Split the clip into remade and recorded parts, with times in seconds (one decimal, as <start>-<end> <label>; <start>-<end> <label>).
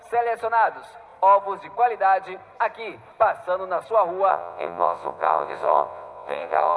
0.0-4.3 recorded; 4.3-6.8 remade